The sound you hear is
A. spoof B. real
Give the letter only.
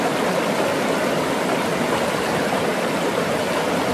B